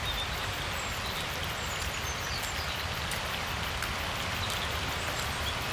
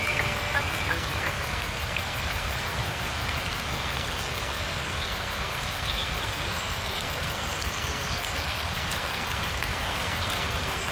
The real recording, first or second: first